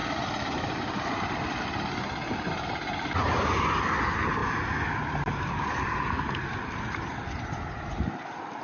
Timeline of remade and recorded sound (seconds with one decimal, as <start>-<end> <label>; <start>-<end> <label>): 0.0-1.4 remade; 1.4-8.6 recorded